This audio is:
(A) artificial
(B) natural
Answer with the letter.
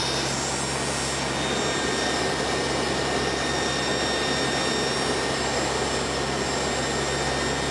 B